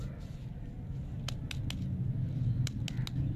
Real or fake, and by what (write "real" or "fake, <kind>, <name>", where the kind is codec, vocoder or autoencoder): real